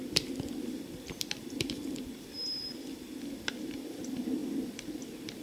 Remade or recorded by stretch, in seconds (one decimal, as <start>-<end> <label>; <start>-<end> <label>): 0.0-5.4 remade